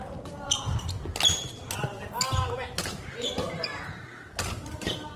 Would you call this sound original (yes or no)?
yes